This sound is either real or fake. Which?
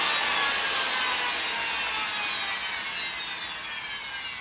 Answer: real